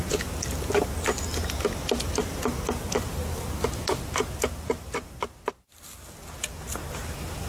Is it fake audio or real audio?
real